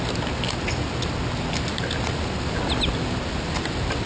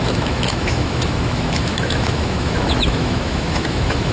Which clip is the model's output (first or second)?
second